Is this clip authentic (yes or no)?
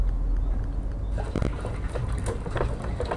yes